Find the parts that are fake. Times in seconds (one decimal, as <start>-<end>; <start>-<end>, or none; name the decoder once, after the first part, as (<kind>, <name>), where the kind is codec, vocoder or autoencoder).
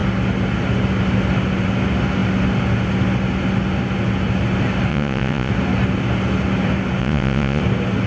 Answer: 4.9-5.5 (vocoder, Vocos); 7.0-7.6